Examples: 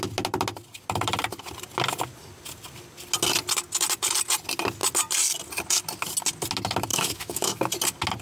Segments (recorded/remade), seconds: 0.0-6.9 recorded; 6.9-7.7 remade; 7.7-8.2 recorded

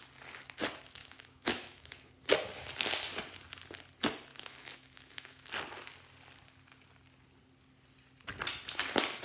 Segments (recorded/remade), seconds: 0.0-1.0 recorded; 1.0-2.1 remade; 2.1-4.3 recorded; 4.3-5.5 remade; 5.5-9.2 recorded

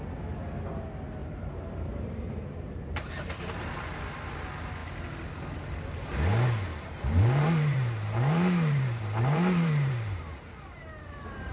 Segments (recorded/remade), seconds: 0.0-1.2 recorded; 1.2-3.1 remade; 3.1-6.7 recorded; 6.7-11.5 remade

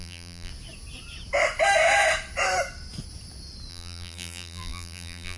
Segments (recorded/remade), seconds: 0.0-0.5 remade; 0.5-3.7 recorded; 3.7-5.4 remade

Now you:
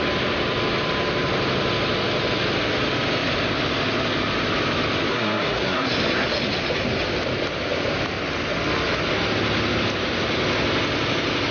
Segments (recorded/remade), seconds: 0.0-5.1 recorded; 5.1-5.9 remade; 5.9-11.5 recorded

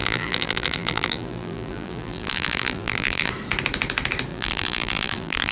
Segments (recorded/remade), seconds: 0.0-3.3 remade; 3.3-4.3 recorded; 4.3-5.5 remade

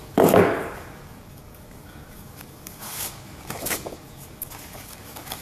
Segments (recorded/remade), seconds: 0.0-5.4 remade